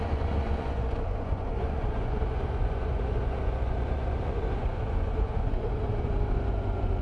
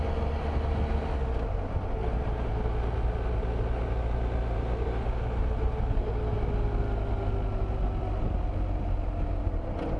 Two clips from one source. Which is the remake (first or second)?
first